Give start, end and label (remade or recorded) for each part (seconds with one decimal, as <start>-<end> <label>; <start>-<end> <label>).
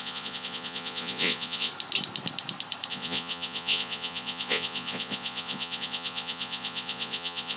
0.0-1.7 remade; 1.7-2.9 recorded; 2.9-7.6 remade